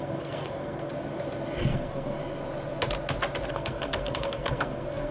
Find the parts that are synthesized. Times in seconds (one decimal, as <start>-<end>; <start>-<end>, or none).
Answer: 0.0-0.9; 1.6-2.2; 3.5-5.1